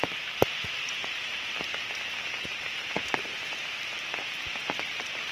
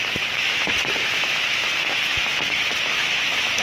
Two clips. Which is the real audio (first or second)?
first